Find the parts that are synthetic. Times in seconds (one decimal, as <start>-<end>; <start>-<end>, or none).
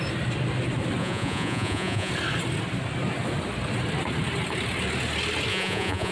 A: 1.0-2.1; 5.5-6.1